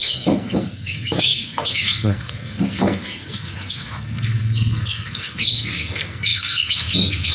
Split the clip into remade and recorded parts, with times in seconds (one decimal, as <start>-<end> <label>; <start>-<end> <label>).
0.0-7.3 remade